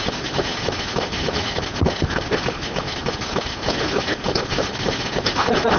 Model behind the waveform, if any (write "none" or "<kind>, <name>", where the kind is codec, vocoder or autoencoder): none